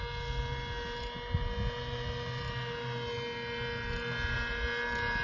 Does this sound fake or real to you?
real